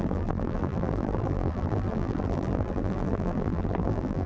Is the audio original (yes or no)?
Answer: no